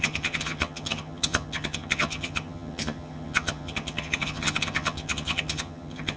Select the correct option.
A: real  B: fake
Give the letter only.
B